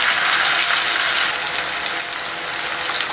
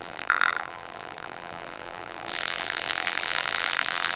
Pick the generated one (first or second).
second